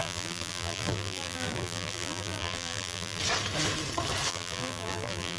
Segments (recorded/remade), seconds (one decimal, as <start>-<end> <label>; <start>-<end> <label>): 0.0-3.2 remade; 3.2-4.3 recorded; 4.3-5.4 remade